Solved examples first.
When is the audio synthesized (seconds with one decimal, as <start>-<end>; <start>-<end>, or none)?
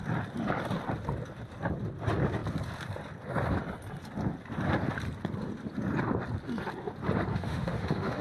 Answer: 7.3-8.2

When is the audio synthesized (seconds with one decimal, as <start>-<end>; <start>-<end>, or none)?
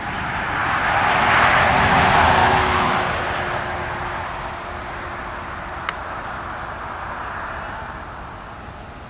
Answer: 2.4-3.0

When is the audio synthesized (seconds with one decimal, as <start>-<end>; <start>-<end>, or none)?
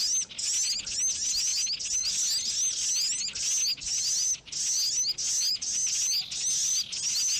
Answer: none